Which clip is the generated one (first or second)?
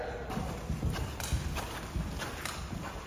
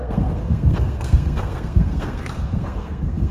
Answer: second